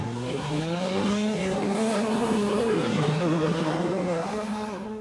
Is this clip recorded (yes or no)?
no